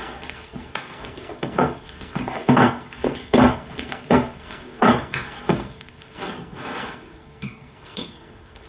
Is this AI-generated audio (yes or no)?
yes